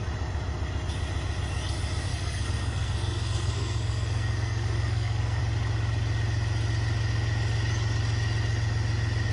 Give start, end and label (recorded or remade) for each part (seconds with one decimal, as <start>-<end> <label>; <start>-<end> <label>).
0.0-2.1 recorded; 2.1-5.4 remade; 5.4-9.3 recorded